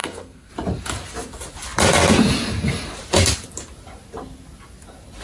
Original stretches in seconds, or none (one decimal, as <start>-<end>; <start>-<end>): 0.5-5.2